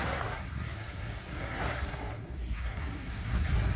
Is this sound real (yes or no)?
no